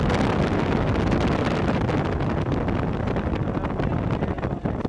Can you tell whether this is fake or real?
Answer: real